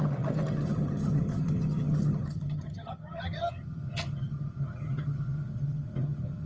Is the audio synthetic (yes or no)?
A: yes